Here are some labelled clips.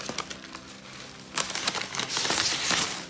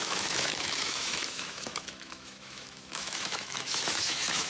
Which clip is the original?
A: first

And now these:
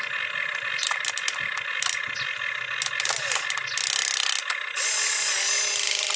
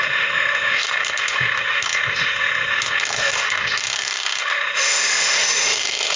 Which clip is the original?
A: first